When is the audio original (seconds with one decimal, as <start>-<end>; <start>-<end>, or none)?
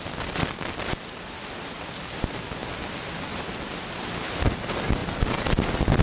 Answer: 0.0-6.0